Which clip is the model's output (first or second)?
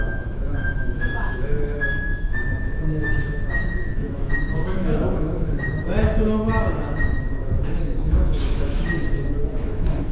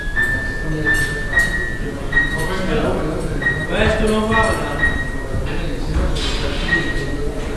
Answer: first